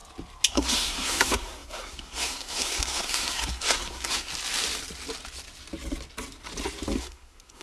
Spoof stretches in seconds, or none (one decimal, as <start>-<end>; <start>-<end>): 0.5-4.3; 7.0-7.6